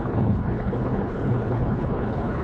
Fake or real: fake